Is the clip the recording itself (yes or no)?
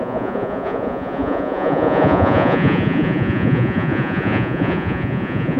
no